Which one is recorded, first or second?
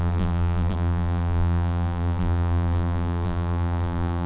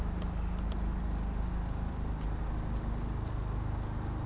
second